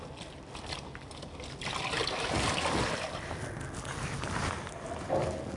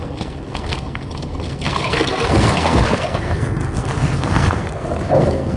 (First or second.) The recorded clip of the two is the first